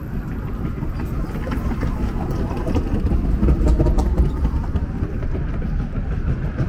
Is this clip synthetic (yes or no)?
no